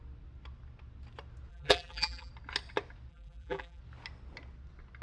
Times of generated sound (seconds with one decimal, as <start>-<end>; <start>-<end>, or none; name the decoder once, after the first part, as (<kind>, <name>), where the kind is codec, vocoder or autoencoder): 1.5-2.3 (vocoder, BigVGAN v2); 3.1-3.8